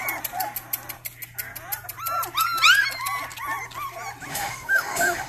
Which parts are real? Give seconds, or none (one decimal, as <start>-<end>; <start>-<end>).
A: 0.0-4.3

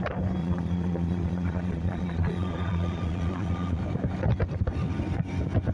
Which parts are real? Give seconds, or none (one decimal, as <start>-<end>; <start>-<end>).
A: 0.0-0.4; 3.8-5.7

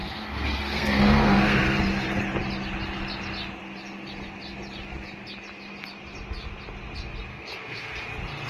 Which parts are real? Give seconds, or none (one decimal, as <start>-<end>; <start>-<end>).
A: 1.8-7.3; 8.0-8.5

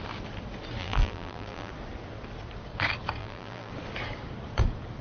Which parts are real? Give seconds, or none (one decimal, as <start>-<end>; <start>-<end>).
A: 0.0-0.8; 1.7-3.2; 3.7-5.0